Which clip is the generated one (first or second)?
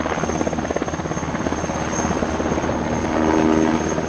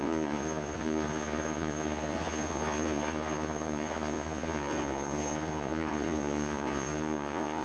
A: second